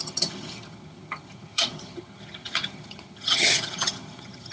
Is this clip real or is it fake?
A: fake